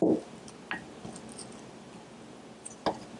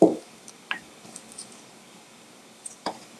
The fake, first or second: second